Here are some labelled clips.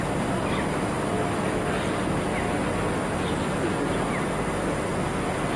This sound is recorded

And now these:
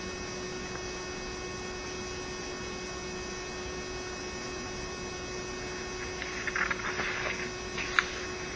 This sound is recorded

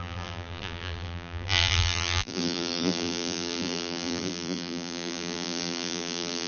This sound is remade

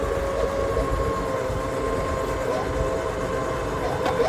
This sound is recorded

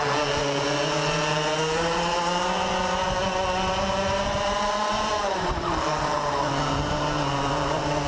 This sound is remade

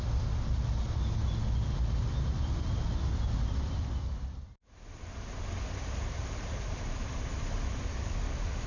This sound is recorded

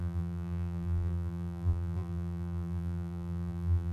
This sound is remade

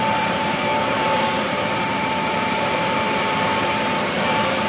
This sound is remade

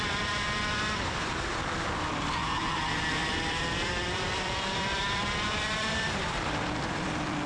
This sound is remade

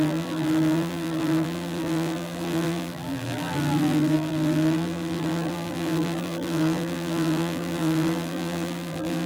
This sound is remade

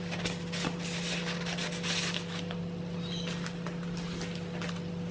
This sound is remade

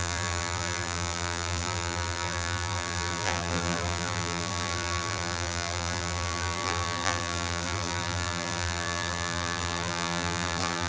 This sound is remade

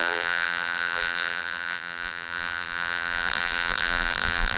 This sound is remade